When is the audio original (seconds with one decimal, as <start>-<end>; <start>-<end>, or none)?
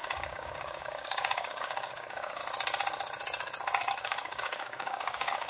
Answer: 2.4-3.9